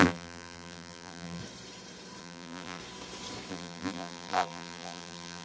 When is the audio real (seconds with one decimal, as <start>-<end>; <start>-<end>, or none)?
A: 1.4-2.2; 2.8-3.5

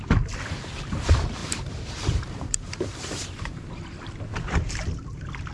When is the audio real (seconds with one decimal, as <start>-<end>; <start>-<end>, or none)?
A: 0.0-1.4; 4.7-5.5

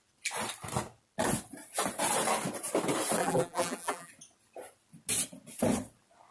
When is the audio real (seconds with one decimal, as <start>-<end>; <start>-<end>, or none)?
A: 0.0-3.2; 4.1-6.3

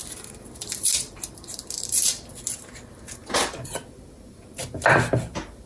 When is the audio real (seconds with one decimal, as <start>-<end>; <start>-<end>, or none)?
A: 2.3-5.7

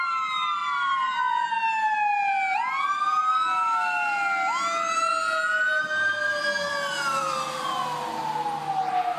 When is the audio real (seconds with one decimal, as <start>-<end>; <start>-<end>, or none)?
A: 0.0-0.6; 1.5-6.9; 7.6-9.2

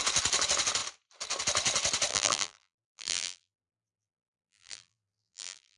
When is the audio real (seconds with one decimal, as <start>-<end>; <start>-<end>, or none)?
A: 0.0-2.1

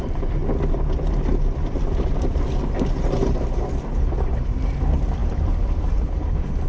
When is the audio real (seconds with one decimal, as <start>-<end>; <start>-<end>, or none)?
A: 0.4-3.9